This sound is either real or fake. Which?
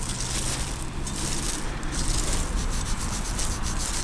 real